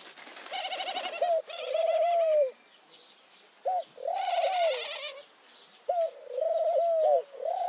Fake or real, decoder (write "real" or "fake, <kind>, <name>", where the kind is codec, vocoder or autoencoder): real